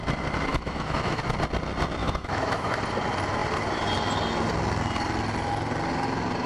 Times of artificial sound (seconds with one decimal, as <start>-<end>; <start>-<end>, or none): 0.5-1.2; 2.0-2.8